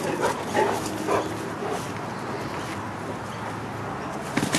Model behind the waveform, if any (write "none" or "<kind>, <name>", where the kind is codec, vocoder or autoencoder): none